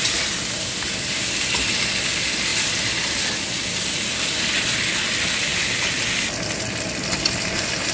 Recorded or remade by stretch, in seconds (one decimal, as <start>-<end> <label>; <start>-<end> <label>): 0.0-7.9 recorded